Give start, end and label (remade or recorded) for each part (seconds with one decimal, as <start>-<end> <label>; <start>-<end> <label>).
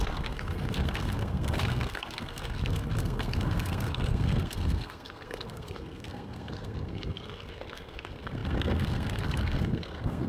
0.0-10.3 remade